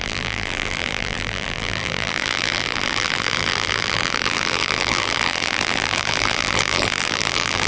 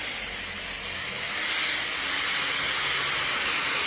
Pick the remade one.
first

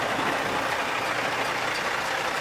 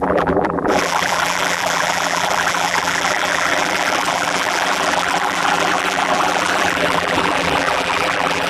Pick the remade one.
second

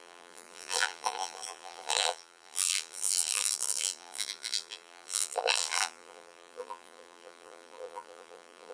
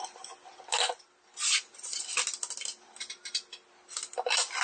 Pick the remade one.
first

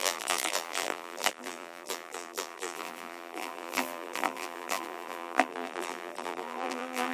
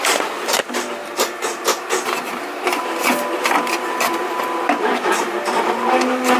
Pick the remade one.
first